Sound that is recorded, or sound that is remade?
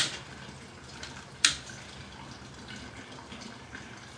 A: recorded